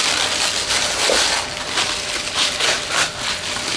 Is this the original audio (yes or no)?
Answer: yes